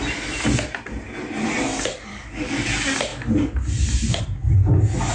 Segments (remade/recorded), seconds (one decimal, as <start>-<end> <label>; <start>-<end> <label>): 0.0-2.1 recorded; 2.1-2.7 remade; 2.7-5.1 recorded